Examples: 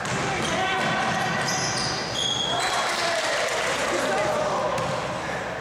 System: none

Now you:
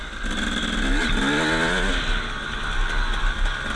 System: none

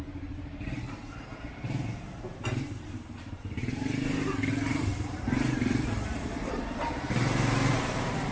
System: vocoder, BigVGAN v2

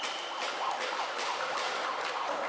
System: none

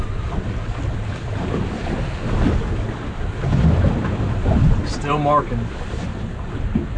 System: none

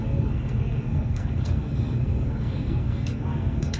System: codec, SNAC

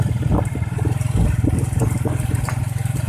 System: vocoder, BigVGAN v2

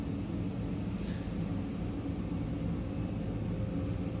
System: none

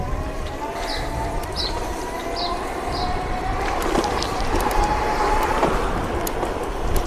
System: vocoder, BigVGAN v2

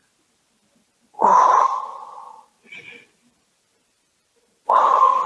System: none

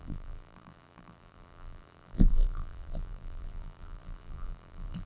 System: vocoder, BigVGAN v2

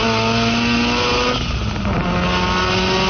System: none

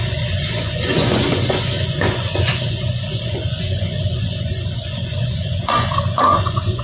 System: vocoder, Vocos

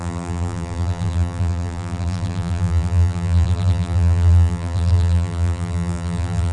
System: vocoder, BigVGAN v2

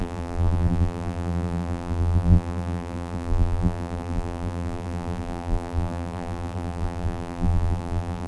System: vocoder, BigVGAN v2